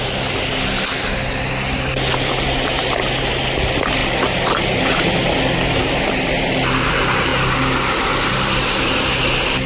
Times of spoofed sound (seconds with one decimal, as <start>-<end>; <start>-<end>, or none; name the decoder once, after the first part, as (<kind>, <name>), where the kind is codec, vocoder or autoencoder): none